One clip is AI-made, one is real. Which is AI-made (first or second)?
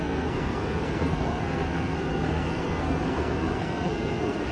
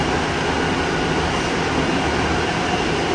first